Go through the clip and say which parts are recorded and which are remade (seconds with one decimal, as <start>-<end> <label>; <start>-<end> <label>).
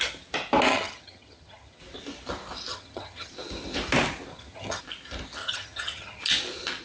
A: 0.0-0.7 recorded; 0.7-1.8 remade; 1.8-2.7 recorded; 2.7-3.3 remade; 3.3-4.3 recorded; 4.3-4.8 remade; 4.8-5.4 recorded; 5.4-6.2 remade; 6.2-6.8 recorded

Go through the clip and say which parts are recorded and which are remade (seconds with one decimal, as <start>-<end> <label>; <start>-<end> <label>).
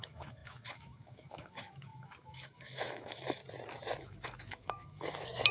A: 0.0-3.4 remade; 3.4-4.0 recorded; 4.0-5.5 remade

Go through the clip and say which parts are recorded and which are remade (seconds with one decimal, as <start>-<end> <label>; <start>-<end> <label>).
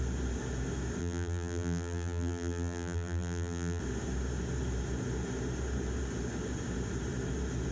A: 0.0-1.0 recorded; 1.0-3.8 remade; 3.8-7.7 recorded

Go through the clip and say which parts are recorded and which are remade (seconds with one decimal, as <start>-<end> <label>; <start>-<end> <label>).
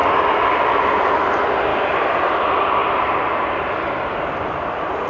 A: 0.0-1.2 recorded; 1.2-5.1 remade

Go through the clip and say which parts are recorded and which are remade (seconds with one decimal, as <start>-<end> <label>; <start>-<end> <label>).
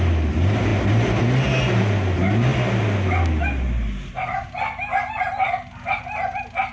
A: 0.0-6.7 recorded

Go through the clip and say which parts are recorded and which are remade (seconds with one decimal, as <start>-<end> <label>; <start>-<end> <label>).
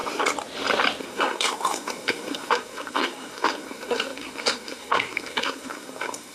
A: 0.0-1.0 recorded; 1.0-6.3 remade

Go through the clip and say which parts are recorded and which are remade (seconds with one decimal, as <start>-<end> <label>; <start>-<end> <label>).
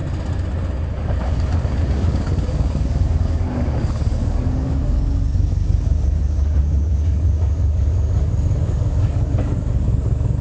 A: 0.0-0.9 recorded; 0.9-10.4 remade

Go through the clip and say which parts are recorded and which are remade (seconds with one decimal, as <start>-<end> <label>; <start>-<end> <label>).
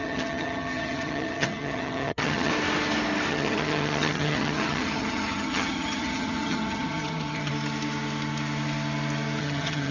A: 0.0-2.5 remade; 2.5-3.3 recorded; 3.3-7.5 remade; 7.5-9.4 recorded; 9.4-9.9 remade